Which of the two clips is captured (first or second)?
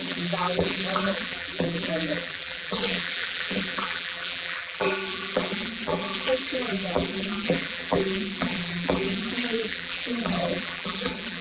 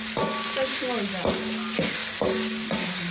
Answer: second